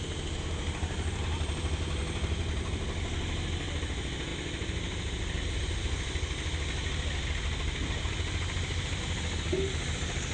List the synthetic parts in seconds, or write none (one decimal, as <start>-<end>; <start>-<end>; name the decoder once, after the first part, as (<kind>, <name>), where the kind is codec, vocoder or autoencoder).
none